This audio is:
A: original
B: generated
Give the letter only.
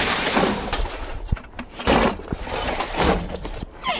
B